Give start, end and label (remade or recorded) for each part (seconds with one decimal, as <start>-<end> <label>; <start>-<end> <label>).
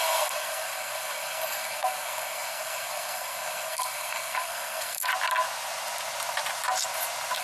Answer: 0.0-5.1 remade; 5.1-7.4 recorded